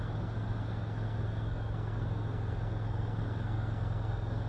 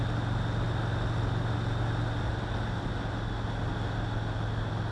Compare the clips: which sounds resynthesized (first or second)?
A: first